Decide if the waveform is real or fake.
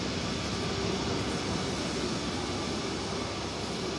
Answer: real